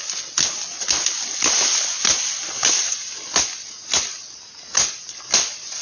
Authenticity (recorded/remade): recorded